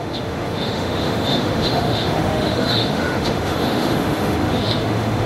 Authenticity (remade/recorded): remade